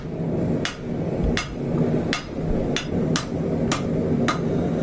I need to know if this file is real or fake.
real